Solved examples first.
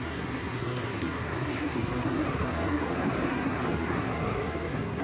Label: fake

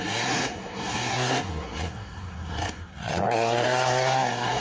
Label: fake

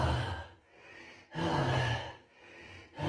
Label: real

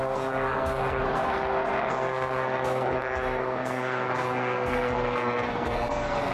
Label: fake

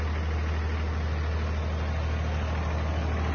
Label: real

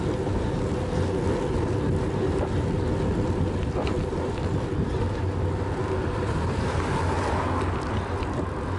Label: real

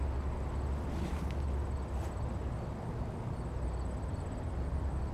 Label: real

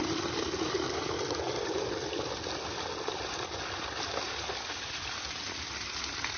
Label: real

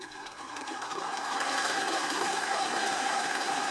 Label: fake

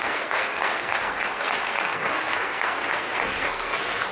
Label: fake